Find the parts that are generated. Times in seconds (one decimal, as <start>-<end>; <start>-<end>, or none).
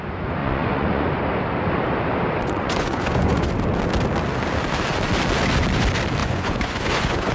0.4-1.1; 2.4-3.5; 6.2-7.3